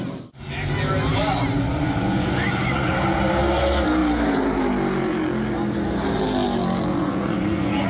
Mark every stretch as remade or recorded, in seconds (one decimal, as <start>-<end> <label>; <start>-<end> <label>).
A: 0.0-1.2 recorded; 1.2-2.9 remade; 2.9-6.9 recorded; 6.9-7.9 remade